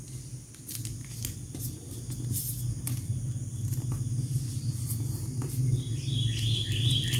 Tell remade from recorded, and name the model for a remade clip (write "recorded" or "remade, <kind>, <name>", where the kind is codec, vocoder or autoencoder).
recorded